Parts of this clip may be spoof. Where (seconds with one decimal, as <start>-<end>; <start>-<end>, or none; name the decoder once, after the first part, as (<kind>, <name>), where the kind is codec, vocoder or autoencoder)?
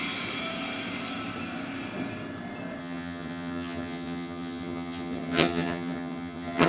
2.8-6.7 (vocoder, HiFi-GAN)